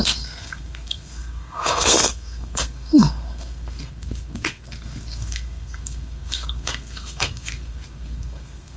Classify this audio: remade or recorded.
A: remade